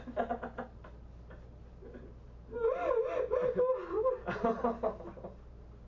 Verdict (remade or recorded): recorded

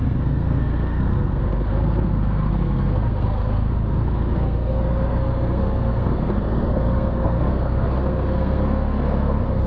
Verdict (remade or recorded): remade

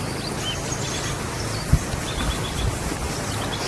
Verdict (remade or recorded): recorded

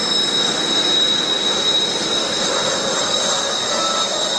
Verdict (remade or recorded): recorded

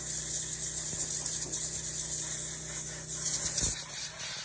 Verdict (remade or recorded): recorded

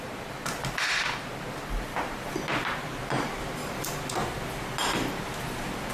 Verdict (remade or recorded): recorded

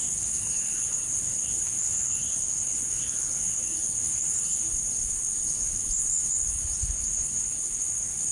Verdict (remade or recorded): remade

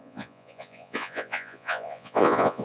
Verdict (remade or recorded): remade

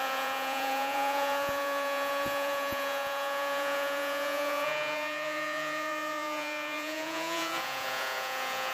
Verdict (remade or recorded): remade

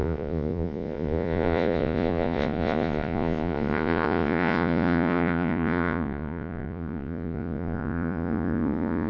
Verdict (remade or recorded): remade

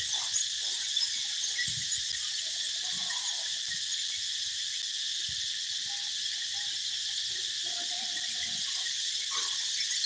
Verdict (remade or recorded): recorded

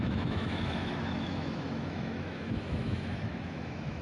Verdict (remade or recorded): remade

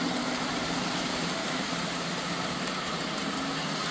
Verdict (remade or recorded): remade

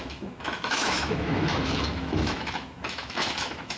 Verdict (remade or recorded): remade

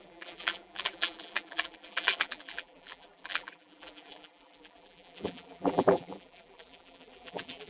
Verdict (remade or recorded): remade